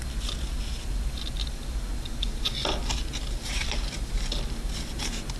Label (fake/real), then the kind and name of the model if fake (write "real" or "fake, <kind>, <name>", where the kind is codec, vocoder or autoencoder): real